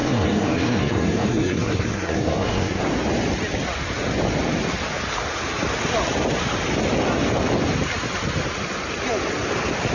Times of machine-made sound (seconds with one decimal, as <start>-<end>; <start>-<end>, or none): 0.0-2.8